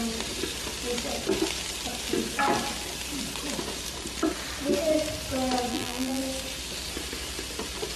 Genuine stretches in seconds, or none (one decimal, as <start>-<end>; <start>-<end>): 0.0-5.7; 6.2-8.0